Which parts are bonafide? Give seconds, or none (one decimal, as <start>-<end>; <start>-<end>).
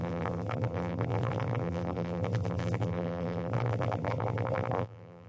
none